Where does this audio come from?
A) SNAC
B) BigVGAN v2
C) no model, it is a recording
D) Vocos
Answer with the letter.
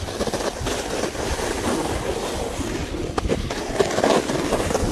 C